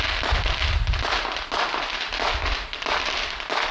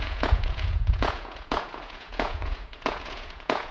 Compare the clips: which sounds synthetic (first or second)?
second